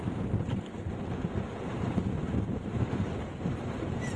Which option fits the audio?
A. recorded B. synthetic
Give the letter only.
B